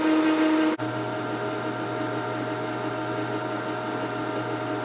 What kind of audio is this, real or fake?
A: real